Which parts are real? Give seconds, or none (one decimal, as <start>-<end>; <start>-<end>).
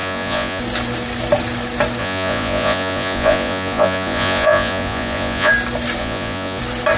0.6-2.0; 5.5-6.0; 6.6-7.0